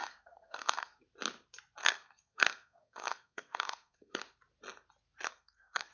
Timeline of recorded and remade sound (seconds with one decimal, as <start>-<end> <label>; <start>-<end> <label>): 0.0-1.0 remade; 1.0-1.8 recorded; 1.8-4.2 remade; 4.2-5.3 recorded; 5.3-5.9 remade

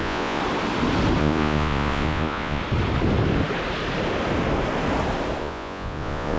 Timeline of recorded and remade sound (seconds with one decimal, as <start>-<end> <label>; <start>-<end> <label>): 0.0-0.4 remade; 0.4-1.2 recorded; 1.2-2.6 remade; 2.6-5.4 recorded; 5.4-6.4 remade

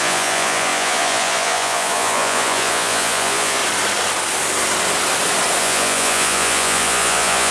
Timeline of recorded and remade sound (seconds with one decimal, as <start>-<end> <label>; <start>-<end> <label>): 0.0-3.6 remade; 3.6-5.6 recorded; 5.6-7.5 remade

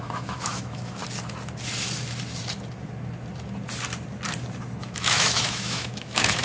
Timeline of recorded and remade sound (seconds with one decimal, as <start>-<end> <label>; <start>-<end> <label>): 0.0-1.0 remade; 1.0-4.8 recorded; 4.8-6.4 remade

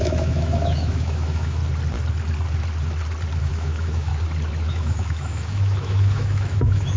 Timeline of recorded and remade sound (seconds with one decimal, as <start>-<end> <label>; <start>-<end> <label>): 0.0-1.6 remade; 1.6-3.4 recorded; 3.4-4.1 remade; 4.1-4.7 recorded; 4.7-7.0 remade

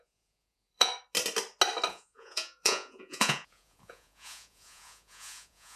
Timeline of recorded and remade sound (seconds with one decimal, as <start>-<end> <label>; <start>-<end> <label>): 0.0-0.9 remade; 0.9-1.9 recorded; 1.9-5.8 remade